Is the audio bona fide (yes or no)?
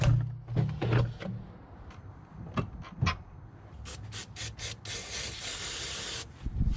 yes